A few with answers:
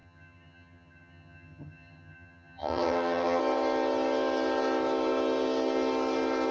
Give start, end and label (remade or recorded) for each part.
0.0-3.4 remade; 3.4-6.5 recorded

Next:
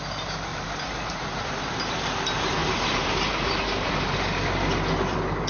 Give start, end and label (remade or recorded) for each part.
0.0-0.5 recorded; 0.5-1.6 remade; 1.6-2.6 recorded; 2.6-3.9 remade; 3.9-5.5 recorded